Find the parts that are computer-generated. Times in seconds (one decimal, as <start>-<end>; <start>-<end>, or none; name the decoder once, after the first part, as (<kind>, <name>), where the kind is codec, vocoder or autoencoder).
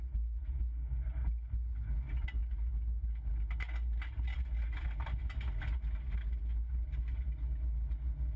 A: none